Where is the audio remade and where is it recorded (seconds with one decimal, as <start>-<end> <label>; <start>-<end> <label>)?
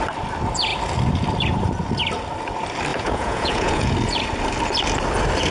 0.0-2.9 recorded; 2.9-3.9 remade; 3.9-5.5 recorded